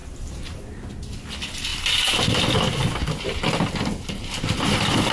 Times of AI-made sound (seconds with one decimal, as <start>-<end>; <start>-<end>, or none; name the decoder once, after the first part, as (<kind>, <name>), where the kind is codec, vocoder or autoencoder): 0.0-0.9 (vocoder, BigVGAN v2)